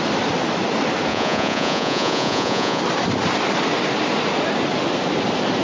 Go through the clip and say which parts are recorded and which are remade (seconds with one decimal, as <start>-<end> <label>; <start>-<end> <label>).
0.0-1.1 recorded; 1.1-2.8 remade; 2.8-5.6 recorded